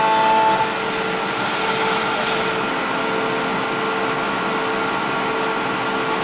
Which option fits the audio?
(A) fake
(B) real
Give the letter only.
B